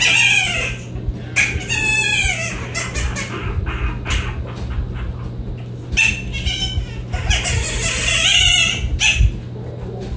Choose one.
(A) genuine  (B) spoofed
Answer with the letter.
A